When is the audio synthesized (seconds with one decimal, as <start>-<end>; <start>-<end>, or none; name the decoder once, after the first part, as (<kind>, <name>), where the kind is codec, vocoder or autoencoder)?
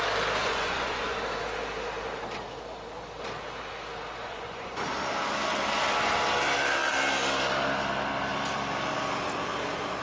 0.4-1.2 (vocoder, Vocos); 4.2-4.9